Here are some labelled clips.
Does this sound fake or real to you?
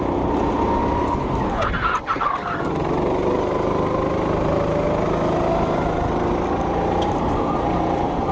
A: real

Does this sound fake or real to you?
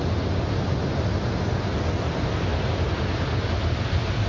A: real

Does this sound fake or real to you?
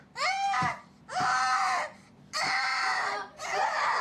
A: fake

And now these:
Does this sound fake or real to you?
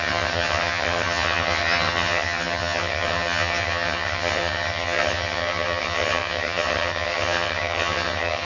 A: fake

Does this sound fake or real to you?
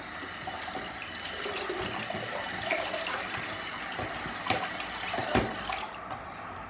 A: real